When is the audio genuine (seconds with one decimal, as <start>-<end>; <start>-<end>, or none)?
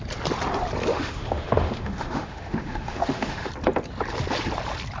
0.0-0.9; 3.5-5.0